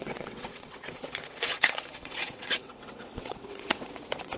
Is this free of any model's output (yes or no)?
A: no